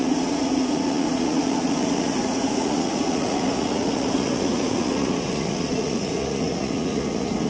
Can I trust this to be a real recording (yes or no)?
no